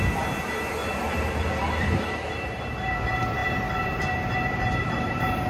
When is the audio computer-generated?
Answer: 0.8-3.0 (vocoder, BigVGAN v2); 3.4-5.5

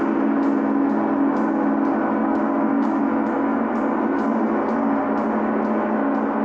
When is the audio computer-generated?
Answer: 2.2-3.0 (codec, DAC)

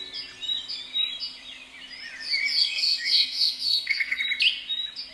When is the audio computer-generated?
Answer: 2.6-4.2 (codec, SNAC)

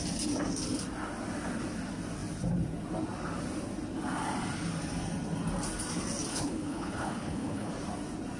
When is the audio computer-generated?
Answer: 6.3-7.7 (codec, HILCodec)

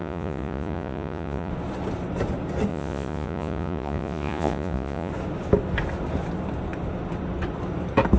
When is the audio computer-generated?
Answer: 0.0-1.5 (vocoder, Vocos); 2.7-5.1